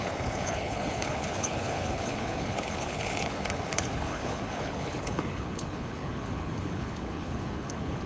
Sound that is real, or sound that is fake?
fake